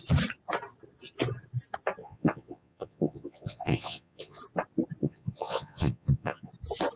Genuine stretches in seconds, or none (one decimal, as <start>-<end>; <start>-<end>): 0.0-2.0; 4.4-5.0; 6.5-7.0